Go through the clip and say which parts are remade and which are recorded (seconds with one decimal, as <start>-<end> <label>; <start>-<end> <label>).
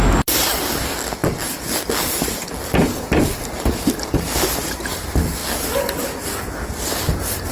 0.0-7.5 recorded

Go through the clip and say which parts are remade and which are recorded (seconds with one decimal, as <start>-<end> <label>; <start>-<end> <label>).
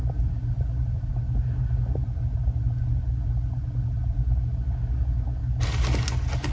0.0-6.5 recorded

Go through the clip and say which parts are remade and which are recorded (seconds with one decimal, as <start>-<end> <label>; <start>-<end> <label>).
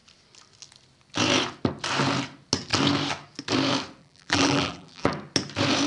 0.0-4.0 recorded; 4.0-5.1 remade; 5.1-5.9 recorded